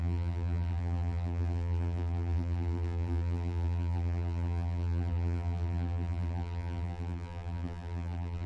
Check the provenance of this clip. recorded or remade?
remade